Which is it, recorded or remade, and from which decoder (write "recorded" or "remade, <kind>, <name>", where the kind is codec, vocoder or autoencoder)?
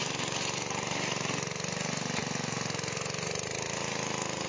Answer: recorded